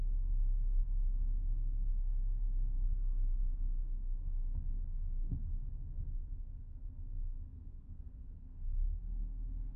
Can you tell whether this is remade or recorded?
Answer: remade